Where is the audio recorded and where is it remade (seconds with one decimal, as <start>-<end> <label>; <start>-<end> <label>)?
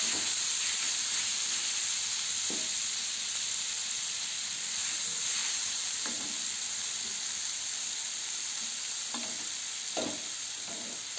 0.0-5.4 recorded; 5.4-6.1 remade; 6.1-11.2 recorded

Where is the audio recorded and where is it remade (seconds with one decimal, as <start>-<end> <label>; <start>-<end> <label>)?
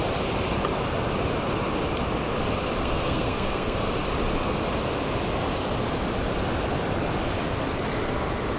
0.0-2.8 recorded; 2.8-3.9 remade; 3.9-8.6 recorded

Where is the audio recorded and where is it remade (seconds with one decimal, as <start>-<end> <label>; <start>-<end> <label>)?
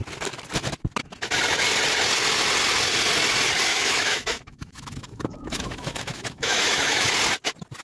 0.0-3.7 recorded; 3.7-7.1 remade; 7.1-7.8 recorded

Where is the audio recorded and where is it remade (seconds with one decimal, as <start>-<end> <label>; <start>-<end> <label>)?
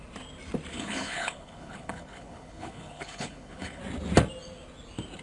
0.0-0.7 recorded; 0.7-3.8 remade; 3.8-5.2 recorded